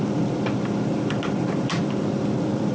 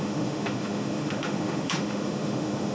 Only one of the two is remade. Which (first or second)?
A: second